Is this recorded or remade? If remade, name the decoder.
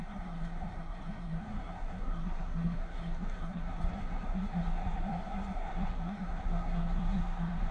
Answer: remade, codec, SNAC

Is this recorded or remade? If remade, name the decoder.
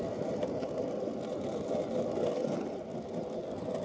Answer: recorded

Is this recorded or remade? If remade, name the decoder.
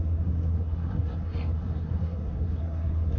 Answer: remade, codec, SNAC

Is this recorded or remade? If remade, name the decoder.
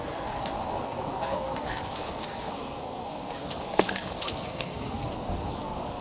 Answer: remade, codec, SNAC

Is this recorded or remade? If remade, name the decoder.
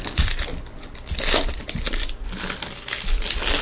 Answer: recorded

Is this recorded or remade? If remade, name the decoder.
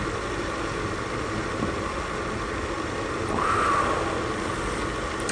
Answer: recorded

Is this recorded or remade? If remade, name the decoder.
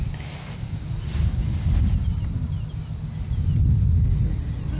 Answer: recorded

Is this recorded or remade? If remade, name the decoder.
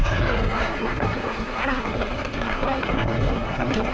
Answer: remade, codec, SNAC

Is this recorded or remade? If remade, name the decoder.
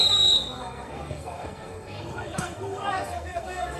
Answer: remade, codec, SNAC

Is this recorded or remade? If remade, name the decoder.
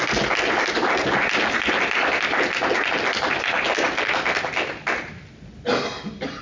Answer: recorded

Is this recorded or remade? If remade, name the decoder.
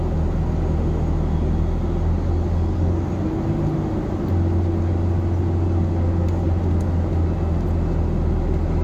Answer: recorded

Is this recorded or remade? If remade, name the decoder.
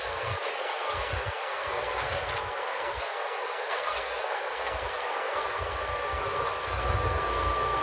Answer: remade, codec, SNAC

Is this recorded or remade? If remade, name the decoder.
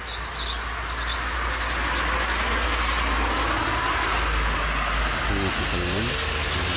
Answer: recorded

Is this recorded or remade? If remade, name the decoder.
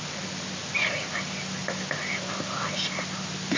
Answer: recorded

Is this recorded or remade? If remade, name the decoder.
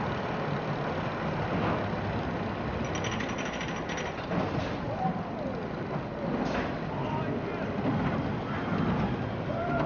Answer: recorded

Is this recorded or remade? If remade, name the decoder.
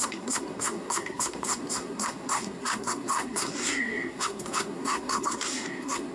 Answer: remade, codec, SNAC